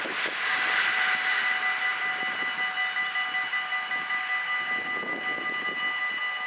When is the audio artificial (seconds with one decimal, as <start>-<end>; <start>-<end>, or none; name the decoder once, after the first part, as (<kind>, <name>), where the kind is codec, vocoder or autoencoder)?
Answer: none